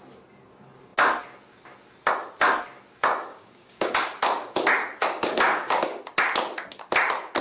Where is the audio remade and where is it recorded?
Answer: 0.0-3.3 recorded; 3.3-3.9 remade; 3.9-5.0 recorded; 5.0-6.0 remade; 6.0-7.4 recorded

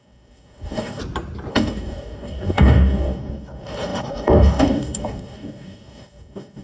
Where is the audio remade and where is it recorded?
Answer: 0.0-1.0 remade; 1.0-1.5 recorded; 1.5-6.6 remade

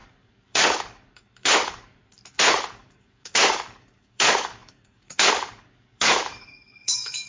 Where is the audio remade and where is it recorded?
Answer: 0.0-2.0 remade; 2.0-2.8 recorded; 2.8-7.3 remade

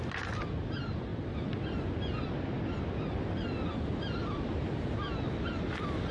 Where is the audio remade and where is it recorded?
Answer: 0.0-6.1 recorded

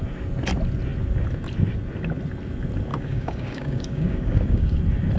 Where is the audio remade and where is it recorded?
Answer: 0.0-2.9 recorded; 2.9-4.8 remade; 4.8-5.2 recorded

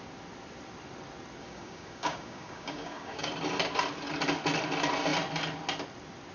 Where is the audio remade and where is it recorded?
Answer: 0.0-1.4 recorded; 1.4-3.3 remade; 3.3-6.3 recorded

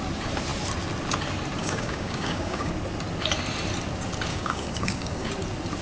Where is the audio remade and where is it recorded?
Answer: 0.0-1.6 recorded; 1.6-2.7 remade; 2.7-4.3 recorded; 4.3-5.3 remade; 5.3-5.8 recorded